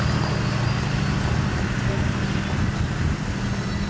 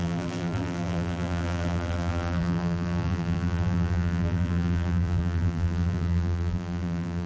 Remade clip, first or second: second